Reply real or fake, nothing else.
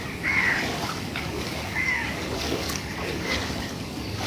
fake